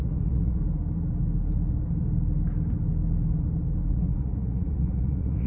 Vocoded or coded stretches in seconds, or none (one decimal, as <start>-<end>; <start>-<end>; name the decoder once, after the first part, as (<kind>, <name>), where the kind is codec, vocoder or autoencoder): 0.0-0.6 (vocoder, Vocos); 3.9-5.5